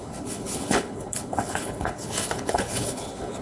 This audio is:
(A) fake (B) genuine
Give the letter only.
A